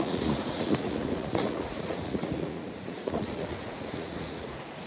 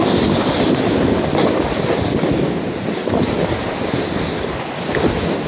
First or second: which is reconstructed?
first